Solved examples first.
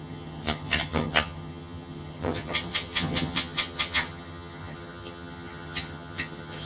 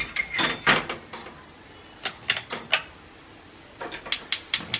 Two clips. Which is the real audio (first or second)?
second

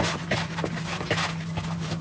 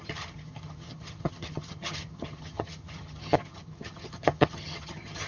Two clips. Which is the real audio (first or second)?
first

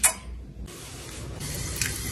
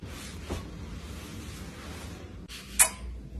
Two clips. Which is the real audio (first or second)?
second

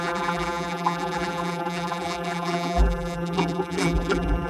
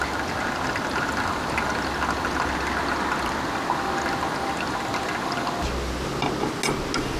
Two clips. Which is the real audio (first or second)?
second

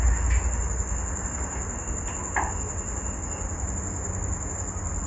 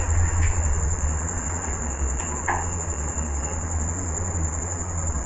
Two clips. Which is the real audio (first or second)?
first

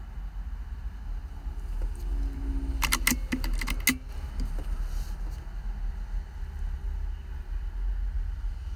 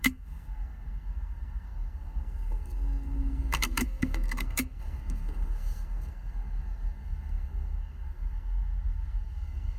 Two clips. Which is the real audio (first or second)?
first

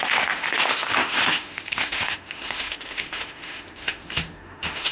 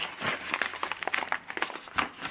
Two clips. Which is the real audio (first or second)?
second